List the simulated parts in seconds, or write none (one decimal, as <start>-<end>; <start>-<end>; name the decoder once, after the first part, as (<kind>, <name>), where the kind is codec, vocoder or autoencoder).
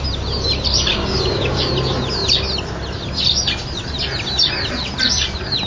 0.9-1.7 (codec, DAC)